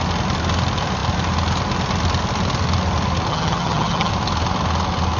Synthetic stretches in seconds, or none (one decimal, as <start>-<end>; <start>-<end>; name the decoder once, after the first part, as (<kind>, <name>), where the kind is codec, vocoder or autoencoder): 3.3-4.1 (vocoder, HiFi-GAN)